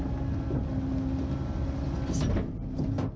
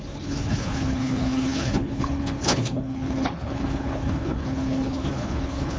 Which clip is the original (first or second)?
first